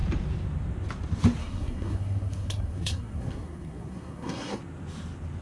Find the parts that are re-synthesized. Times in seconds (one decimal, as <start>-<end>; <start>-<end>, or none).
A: 1.4-4.6